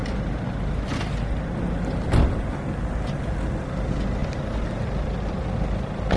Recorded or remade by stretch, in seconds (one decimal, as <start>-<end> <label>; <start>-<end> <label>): 0.0-6.2 recorded